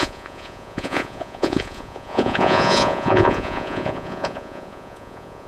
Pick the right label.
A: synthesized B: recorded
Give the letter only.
A